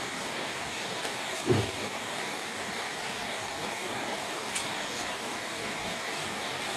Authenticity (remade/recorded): remade